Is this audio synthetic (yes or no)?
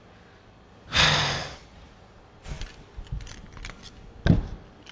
no